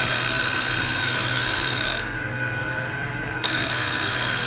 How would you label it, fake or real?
fake